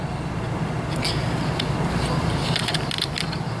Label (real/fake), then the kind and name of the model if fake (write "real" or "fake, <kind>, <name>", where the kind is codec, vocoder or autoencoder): real